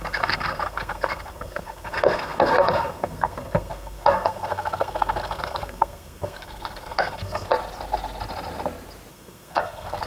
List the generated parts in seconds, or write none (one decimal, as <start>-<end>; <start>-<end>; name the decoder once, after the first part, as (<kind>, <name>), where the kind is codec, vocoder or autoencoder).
0.0-7.5 (codec, SNAC); 9.1-10.1